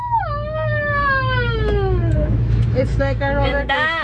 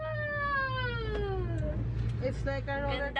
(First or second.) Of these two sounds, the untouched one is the second